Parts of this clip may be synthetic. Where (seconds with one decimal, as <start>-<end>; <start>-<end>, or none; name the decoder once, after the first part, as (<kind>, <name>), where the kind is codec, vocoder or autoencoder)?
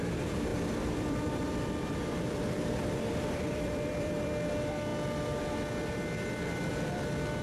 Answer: 0.5-4.3 (vocoder, BigVGAN v2)